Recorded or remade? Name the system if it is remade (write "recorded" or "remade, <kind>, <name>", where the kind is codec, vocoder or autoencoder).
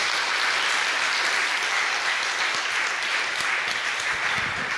recorded